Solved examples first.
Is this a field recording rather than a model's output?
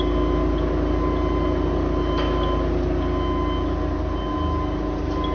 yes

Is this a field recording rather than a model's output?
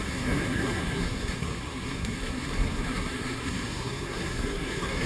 no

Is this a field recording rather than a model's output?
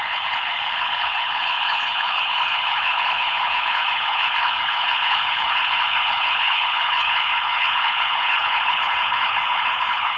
no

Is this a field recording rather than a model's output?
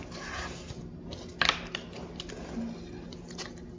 yes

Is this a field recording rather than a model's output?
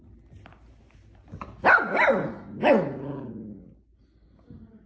yes